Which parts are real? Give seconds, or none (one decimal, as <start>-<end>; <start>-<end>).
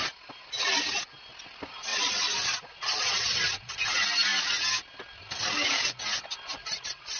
0.0-1.9; 3.7-7.2